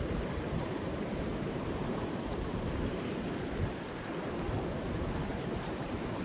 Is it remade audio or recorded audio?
remade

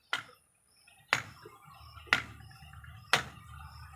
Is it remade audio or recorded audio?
recorded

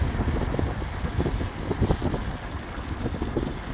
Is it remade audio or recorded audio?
recorded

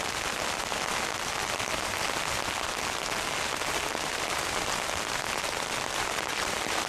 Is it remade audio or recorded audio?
recorded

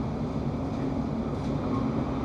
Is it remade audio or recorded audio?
recorded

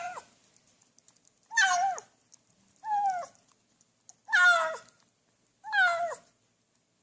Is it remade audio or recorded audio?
recorded